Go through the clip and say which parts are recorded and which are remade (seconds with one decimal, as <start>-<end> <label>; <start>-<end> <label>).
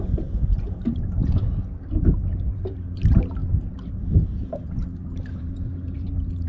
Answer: 0.0-1.2 remade; 1.2-2.5 recorded; 2.5-6.5 remade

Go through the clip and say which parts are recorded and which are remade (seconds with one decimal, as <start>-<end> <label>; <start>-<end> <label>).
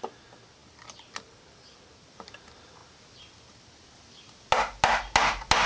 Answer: 0.0-0.6 recorded; 0.6-1.8 remade; 1.8-5.7 recorded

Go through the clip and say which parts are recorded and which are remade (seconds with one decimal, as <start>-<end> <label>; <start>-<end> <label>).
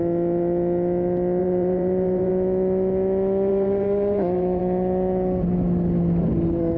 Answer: 0.0-1.4 recorded; 1.4-2.3 remade; 2.3-3.5 recorded; 3.5-4.6 remade; 4.6-6.8 recorded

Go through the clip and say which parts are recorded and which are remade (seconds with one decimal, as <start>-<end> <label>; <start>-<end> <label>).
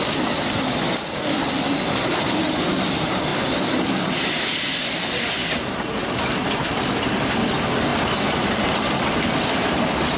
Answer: 0.0-3.3 recorded; 3.3-4.6 remade; 4.6-6.0 recorded; 6.0-6.8 remade; 6.8-10.2 recorded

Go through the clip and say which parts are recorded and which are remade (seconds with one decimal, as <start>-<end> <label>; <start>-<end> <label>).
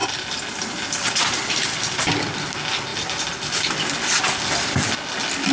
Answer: 0.0-1.8 remade; 1.8-2.9 recorded; 2.9-4.2 remade; 4.2-5.5 recorded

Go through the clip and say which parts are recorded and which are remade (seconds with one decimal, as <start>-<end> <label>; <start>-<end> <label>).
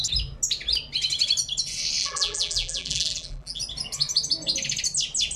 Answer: 0.0-2.0 recorded; 2.0-3.6 remade; 3.6-5.4 recorded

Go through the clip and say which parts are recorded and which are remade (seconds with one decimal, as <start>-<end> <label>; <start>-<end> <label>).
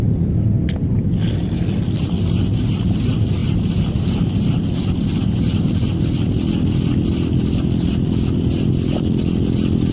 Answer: 0.0-3.4 recorded; 3.4-6.0 remade; 6.0-9.9 recorded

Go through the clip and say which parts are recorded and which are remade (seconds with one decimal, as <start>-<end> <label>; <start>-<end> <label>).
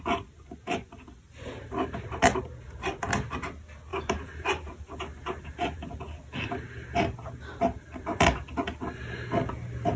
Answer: 0.0-1.3 recorded; 1.3-2.4 remade; 2.4-3.9 recorded; 3.9-5.9 remade; 5.9-10.0 recorded